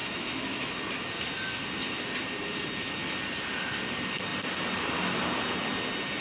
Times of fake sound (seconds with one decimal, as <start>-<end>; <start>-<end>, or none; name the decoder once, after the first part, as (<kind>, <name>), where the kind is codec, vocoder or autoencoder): 0.0-0.7 (autoencoder, DAC-VAE)